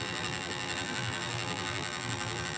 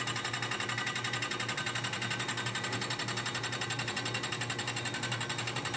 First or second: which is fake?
first